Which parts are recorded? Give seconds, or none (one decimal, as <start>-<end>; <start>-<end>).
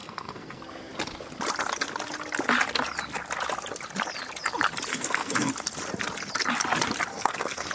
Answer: 0.6-4.9; 5.5-7.1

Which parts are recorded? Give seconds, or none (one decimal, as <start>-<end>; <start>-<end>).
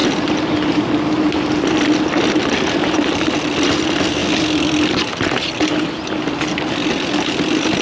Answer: 0.0-7.8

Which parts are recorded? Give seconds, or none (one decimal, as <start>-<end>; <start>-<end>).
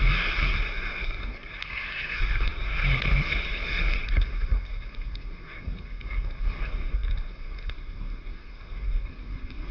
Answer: none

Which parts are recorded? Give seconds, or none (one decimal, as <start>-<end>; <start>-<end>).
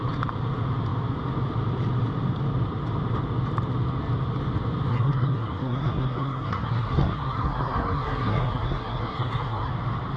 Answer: 0.0-4.9; 9.7-10.2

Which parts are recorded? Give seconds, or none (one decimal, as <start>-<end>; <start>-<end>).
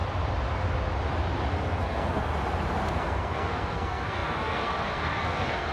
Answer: 0.0-1.5; 2.3-2.9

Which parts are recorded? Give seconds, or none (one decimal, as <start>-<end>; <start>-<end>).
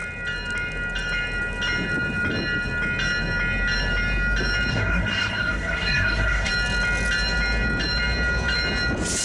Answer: 0.0-4.7; 6.5-9.2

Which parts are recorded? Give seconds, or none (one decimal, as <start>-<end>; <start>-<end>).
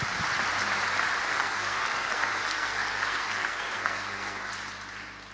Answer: 0.0-1.3; 4.5-5.3